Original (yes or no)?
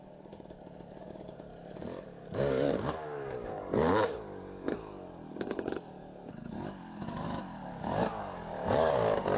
no